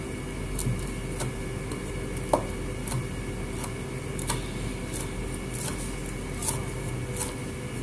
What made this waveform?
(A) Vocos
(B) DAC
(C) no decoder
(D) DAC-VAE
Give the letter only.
C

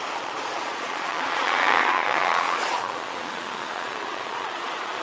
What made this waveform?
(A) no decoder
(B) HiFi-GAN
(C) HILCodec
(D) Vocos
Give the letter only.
D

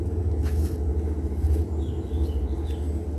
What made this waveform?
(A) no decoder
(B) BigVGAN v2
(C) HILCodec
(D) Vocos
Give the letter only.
A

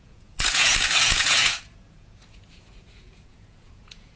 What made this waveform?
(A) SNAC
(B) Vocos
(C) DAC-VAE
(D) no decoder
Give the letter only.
B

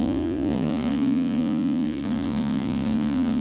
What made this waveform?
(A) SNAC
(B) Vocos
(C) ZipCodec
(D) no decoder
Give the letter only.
B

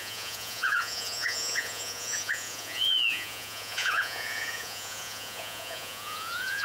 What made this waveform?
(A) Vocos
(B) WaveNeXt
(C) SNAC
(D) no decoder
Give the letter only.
A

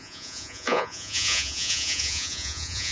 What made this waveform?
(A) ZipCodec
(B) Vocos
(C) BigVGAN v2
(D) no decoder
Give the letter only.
B